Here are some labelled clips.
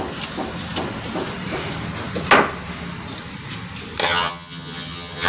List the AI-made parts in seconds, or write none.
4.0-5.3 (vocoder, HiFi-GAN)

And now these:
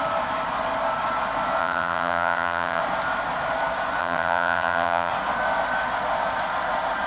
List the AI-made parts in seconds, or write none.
1.6-2.8 (vocoder, HiFi-GAN); 4.0-5.1

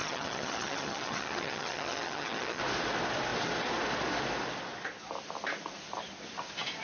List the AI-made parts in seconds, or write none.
0.0-2.6 (vocoder, HiFi-GAN)

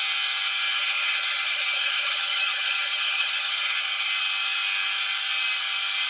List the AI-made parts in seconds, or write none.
0.7-4.1 (vocoder, HiFi-GAN)